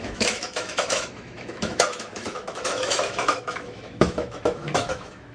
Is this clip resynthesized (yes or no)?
yes